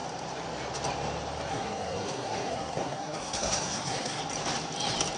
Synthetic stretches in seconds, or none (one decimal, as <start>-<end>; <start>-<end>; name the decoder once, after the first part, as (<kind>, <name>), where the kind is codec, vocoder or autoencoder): 1.5-4.2 (codec, SNAC)